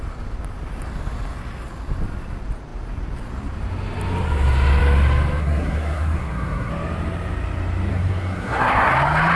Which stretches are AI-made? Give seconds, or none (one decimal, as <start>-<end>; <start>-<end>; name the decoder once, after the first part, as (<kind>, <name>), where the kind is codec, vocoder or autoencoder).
5.4-6.7 (codec, SNAC); 7.9-8.9